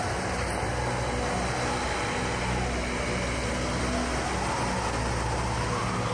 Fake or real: real